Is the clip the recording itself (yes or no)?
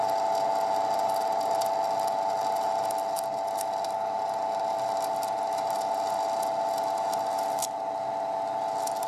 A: yes